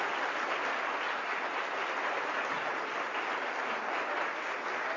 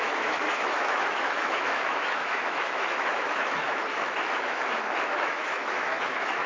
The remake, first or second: second